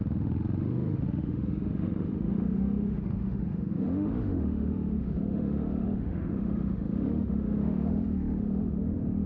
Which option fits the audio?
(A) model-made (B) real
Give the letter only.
A